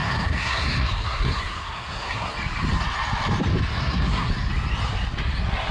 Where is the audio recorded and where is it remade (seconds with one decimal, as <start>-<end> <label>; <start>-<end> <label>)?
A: 0.0-2.3 remade; 2.3-3.7 recorded; 3.7-4.3 remade; 4.3-5.7 recorded